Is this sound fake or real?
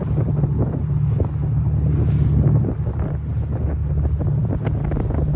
real